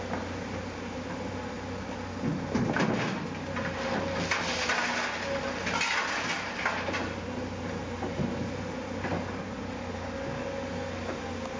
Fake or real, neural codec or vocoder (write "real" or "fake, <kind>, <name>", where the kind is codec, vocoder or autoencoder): real